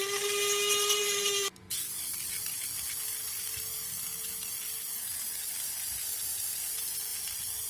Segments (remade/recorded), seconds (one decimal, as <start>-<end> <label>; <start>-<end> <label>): 0.0-7.1 recorded; 7.1-7.7 remade